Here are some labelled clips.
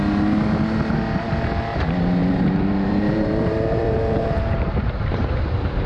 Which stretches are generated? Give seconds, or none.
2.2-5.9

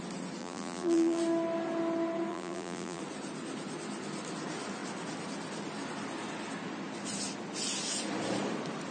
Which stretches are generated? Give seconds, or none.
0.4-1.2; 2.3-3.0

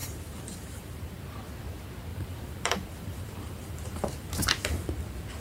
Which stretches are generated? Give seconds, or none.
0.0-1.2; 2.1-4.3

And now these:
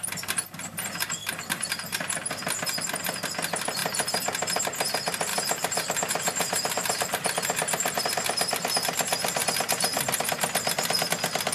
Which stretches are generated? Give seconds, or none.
1.2-2.3; 5.3-8.0